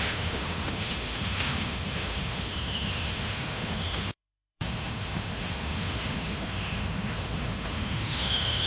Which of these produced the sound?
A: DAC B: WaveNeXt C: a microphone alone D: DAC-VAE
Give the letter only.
D